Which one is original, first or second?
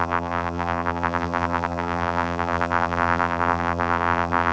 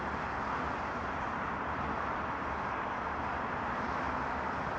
second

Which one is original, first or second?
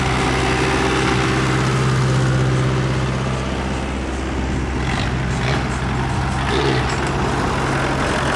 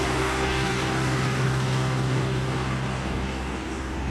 first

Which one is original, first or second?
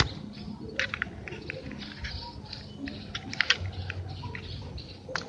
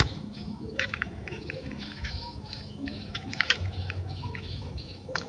first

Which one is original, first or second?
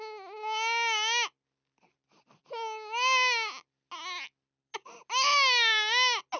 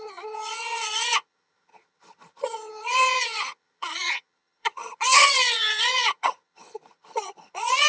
first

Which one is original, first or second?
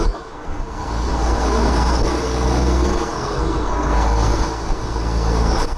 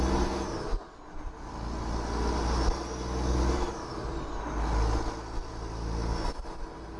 second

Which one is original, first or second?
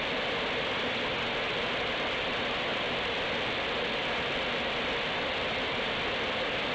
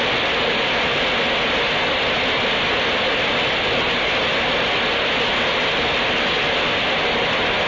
second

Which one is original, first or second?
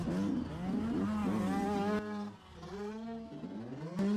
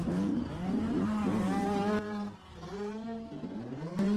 first